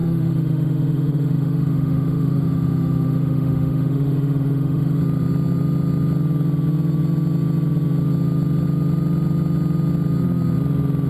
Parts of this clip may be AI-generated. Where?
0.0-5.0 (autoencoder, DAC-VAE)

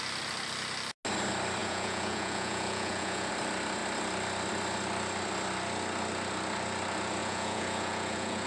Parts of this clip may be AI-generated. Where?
1.6-3.3 (vocoder, Vocos); 7.2-8.5

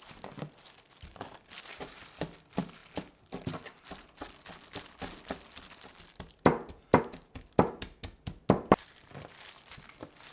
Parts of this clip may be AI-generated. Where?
none

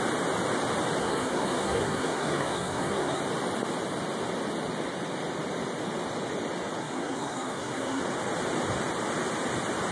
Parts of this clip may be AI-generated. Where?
1.0-3.2 (codec, SNAC); 6.8-8.0

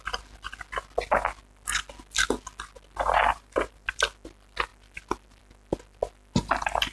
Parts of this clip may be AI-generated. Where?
3.3-4.0 (vocoder, BigVGAN v2)

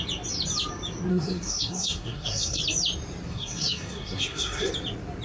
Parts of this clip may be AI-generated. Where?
1.1-2.6 (codec, SNAC); 3.3-4.7

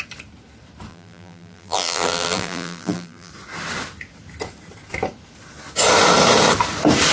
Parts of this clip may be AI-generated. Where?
0.9-3.3 (vocoder, BigVGAN v2)

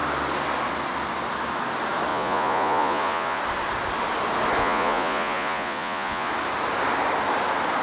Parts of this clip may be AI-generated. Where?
2.1-3.4 (vocoder, Vocos); 4.6-6.3